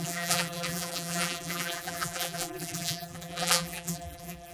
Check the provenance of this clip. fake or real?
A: fake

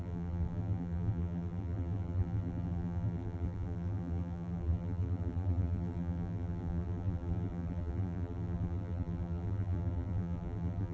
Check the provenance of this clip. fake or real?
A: fake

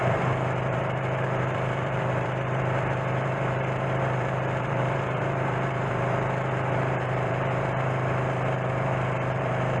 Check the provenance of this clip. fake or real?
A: fake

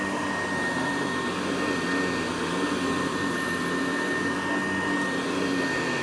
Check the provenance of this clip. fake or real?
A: real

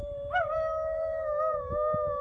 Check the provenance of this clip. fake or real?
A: fake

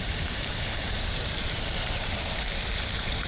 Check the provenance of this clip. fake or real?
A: fake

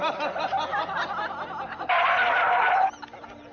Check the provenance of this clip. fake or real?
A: real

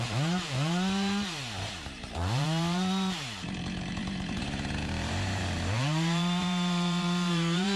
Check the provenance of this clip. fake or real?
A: fake